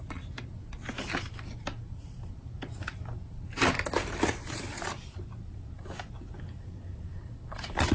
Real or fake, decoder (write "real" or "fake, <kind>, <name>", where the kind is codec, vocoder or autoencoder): real